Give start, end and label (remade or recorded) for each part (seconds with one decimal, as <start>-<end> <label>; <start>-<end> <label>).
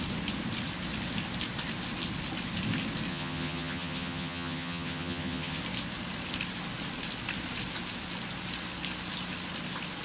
0.0-3.1 recorded; 3.1-5.6 remade; 5.6-10.0 recorded